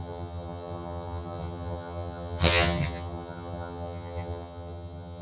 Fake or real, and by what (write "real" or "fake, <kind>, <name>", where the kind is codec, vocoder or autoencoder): fake, vocoder, HiFi-GAN